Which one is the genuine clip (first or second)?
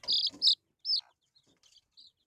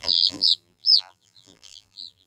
first